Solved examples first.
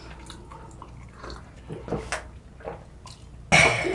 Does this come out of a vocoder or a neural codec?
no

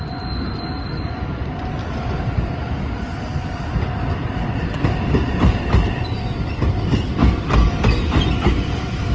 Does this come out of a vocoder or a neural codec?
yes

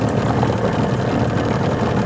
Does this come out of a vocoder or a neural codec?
no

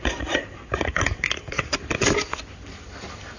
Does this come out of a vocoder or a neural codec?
no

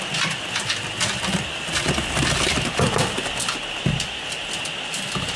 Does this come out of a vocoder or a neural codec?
no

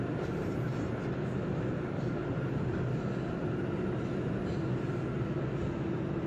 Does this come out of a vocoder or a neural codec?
no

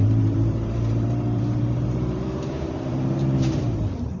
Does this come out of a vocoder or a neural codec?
yes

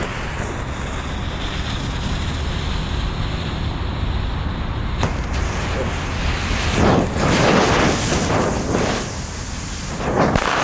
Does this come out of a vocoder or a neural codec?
no